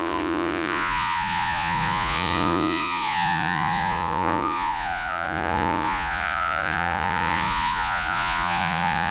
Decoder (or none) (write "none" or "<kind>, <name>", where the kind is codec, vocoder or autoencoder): vocoder, Vocos